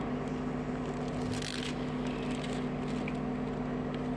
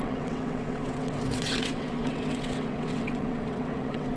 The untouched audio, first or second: first